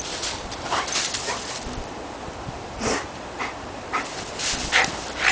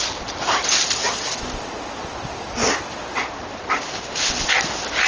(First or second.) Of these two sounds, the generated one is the first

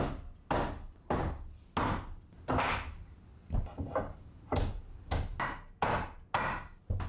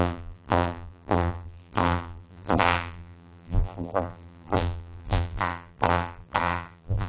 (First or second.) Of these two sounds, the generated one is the second